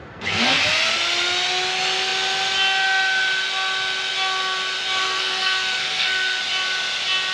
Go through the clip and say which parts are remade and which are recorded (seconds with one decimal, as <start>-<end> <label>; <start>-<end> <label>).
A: 0.0-0.6 remade; 0.6-5.0 recorded; 5.0-6.4 remade; 6.4-7.3 recorded